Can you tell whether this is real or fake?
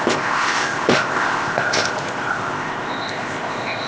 fake